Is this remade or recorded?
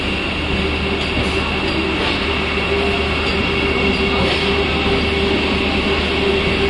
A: recorded